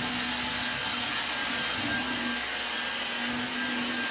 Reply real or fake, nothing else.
real